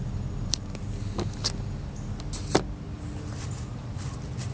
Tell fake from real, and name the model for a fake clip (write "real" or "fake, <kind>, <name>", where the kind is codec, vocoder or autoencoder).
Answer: real